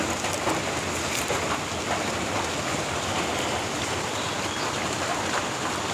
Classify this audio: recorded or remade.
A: recorded